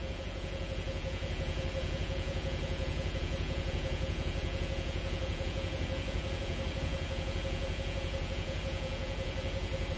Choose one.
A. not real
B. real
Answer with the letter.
A